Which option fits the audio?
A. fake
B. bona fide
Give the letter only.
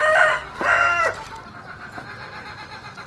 B